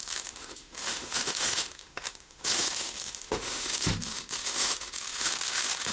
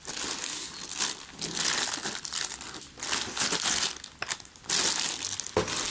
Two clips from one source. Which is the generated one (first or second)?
first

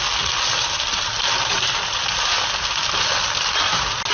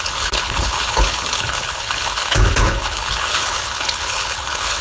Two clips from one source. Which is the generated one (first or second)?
second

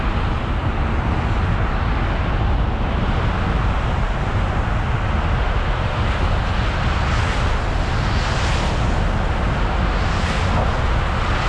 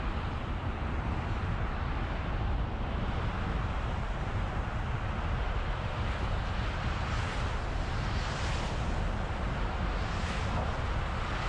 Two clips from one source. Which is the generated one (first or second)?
second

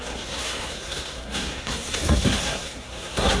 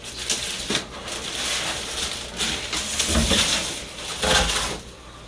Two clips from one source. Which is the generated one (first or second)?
first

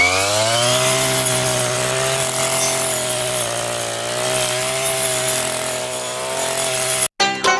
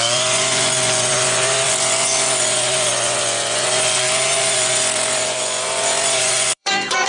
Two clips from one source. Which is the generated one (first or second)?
second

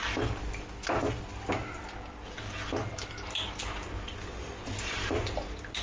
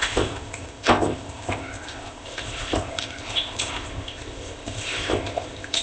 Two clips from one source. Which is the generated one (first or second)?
second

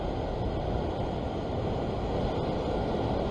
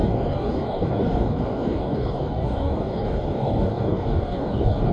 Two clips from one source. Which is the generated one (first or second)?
second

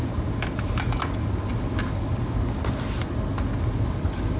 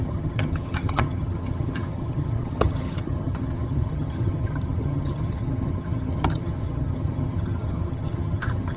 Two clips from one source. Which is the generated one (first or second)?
second